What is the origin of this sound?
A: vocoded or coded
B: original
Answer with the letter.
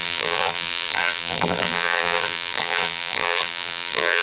A